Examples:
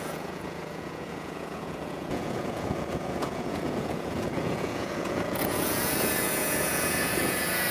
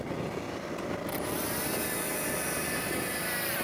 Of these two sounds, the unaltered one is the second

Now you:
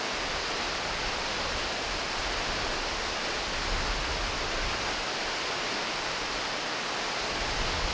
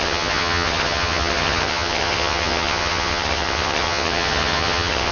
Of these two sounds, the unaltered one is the first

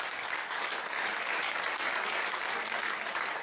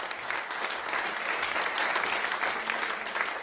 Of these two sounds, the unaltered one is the second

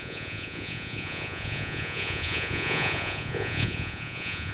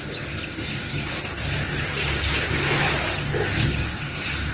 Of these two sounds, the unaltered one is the second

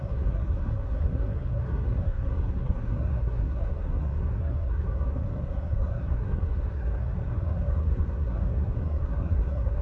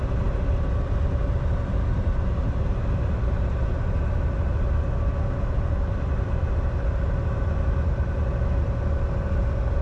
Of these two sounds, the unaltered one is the second